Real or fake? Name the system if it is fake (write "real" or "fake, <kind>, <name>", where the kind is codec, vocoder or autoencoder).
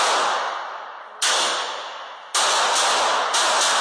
real